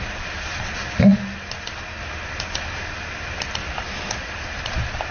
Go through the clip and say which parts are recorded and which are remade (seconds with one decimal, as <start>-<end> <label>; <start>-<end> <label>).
0.0-5.1 recorded